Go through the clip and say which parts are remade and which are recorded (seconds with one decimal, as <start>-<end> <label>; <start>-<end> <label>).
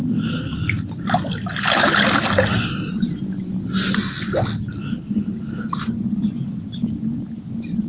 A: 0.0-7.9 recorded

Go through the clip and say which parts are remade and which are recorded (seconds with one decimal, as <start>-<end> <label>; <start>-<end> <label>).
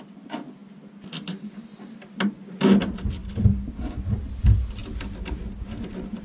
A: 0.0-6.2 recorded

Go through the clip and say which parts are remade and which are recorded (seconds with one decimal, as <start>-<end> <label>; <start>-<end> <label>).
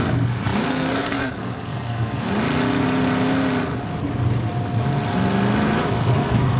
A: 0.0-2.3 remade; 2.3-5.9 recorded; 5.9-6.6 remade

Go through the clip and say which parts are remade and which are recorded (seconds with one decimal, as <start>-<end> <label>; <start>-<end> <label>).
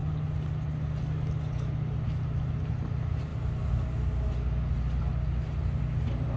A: 0.0-6.4 recorded